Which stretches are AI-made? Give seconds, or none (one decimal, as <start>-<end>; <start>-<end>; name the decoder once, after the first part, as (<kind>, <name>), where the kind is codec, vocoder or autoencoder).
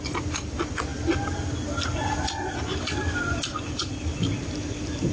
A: none